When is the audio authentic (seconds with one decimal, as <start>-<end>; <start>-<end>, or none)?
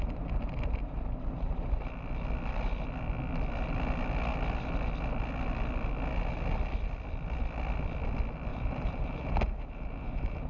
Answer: 0.0-8.5